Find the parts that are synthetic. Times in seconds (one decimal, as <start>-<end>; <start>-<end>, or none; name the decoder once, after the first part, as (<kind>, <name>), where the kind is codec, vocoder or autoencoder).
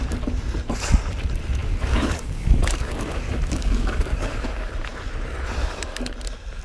1.6-4.7 (codec, DAC); 5.6-6.1